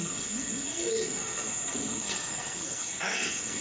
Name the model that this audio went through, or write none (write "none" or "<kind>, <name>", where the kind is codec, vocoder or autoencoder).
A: codec, SNAC